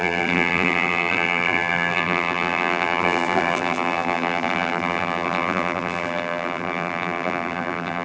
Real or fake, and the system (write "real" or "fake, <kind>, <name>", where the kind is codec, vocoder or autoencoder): fake, vocoder, BigVGAN v2